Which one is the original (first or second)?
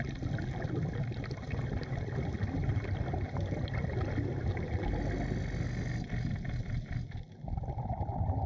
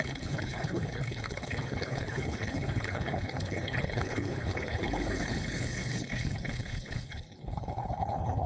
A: first